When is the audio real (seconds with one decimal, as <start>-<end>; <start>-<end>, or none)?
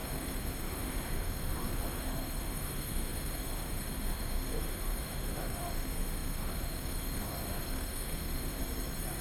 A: 8.6-9.2